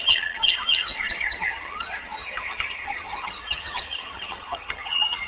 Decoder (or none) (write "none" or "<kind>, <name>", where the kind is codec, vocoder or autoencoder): vocoder, HiFi-GAN